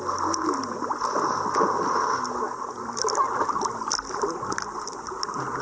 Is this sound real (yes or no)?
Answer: yes